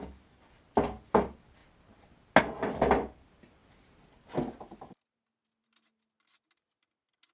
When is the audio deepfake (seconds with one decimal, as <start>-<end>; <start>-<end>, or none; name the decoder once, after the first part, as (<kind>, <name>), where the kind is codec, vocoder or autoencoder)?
none

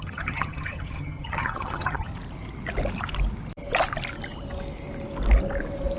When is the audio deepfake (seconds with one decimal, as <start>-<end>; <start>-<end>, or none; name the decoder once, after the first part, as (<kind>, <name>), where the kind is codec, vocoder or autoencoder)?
0.0-2.1 (vocoder, HiFi-GAN)

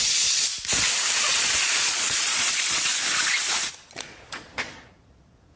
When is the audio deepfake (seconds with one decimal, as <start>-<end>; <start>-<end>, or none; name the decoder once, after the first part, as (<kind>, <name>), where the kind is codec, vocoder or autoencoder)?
0.0-0.5 (vocoder, Vocos); 1.3-2.9; 3.7-5.6